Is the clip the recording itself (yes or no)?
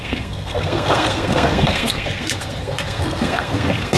no